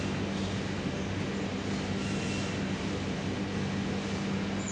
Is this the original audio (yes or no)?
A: yes